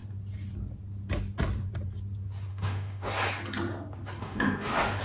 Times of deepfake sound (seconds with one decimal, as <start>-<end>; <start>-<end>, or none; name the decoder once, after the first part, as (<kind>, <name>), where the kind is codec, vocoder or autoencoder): 2.5-3.1 (autoencoder, DAC-VAE); 4.2-5.0